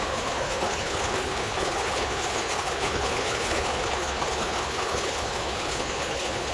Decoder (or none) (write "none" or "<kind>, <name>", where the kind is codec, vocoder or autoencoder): codec, HILCodec